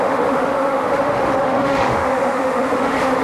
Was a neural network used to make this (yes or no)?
yes